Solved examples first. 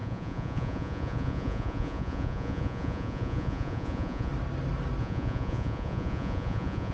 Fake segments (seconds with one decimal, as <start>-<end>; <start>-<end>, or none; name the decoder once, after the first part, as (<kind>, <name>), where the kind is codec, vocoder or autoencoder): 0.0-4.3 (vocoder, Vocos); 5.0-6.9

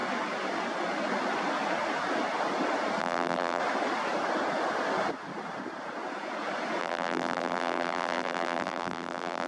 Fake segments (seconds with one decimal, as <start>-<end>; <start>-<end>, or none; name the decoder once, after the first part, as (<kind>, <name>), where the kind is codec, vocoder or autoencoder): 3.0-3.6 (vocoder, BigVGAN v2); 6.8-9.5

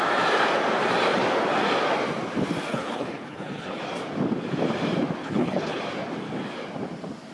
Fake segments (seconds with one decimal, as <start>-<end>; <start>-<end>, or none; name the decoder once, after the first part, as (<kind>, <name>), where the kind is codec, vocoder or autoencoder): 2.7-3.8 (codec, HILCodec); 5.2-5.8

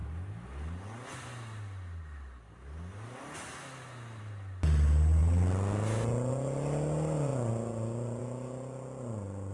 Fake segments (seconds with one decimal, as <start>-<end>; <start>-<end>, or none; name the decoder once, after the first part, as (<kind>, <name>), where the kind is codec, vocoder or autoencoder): none

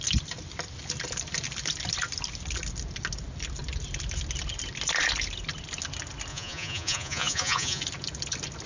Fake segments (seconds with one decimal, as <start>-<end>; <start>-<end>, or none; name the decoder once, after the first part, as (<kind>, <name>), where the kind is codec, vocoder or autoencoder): 6.3-7.8 (vocoder, Vocos)